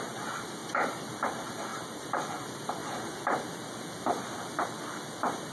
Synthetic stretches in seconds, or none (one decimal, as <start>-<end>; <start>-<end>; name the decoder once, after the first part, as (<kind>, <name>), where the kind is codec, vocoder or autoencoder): 0.6-1.2 (vocoder, BigVGAN v2); 1.7-2.2